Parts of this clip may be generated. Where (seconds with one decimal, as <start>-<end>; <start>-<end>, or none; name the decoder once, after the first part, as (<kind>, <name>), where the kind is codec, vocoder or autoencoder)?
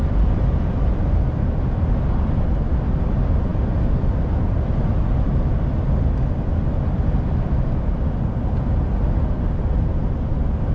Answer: none